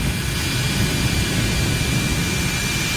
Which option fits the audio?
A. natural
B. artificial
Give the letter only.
A